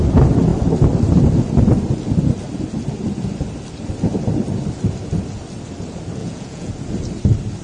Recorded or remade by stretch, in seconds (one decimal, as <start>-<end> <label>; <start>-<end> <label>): 0.0-6.2 recorded; 6.2-6.7 remade; 6.7-7.6 recorded